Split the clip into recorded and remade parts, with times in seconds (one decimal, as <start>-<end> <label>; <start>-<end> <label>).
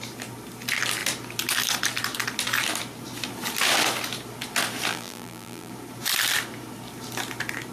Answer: 0.0-4.9 recorded; 4.9-5.7 remade; 5.7-7.7 recorded